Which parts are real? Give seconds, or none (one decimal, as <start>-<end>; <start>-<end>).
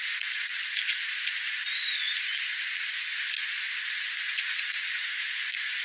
0.0-5.8